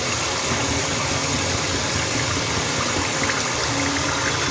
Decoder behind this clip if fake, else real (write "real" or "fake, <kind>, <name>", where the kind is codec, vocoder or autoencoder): real